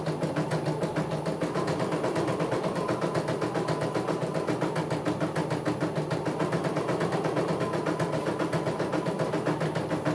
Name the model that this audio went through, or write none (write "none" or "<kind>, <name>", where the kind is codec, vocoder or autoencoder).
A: none